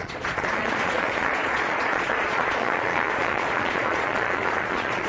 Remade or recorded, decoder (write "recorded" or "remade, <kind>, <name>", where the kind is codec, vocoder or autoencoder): remade, vocoder, Vocos